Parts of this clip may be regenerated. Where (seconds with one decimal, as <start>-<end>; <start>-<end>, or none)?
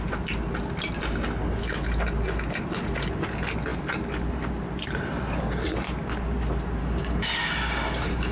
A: 6.8-8.3